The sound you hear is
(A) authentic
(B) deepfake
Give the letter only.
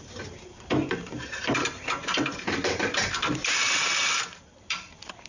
B